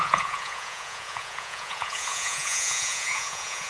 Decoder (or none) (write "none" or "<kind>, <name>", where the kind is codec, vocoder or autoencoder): vocoder, Vocos